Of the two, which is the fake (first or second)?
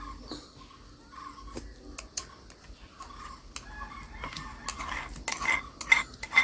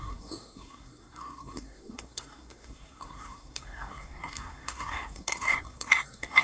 second